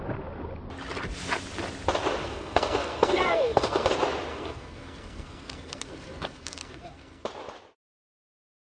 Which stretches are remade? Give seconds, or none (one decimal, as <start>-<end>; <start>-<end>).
2.2-3.9; 4.3-7.3